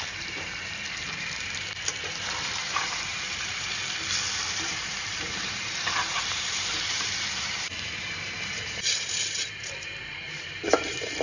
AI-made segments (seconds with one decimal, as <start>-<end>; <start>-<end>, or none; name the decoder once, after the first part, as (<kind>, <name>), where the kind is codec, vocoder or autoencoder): 0.0-3.8 (vocoder, BigVGAN v2); 4.4-11.2